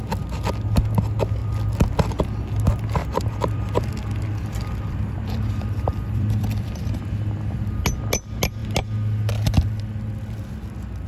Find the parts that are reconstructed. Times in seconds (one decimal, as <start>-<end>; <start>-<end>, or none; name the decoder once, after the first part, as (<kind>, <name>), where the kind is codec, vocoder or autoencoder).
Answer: 3.0-6.9 (vocoder, BigVGAN v2)